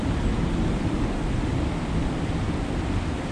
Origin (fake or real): real